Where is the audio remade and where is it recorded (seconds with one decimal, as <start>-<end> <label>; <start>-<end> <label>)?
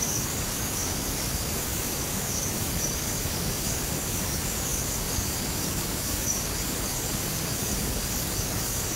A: 0.0-9.0 remade